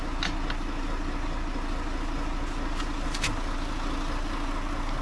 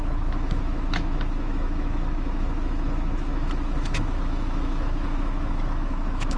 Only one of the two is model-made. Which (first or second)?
second